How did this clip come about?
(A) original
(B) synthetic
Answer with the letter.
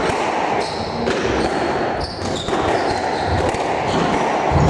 A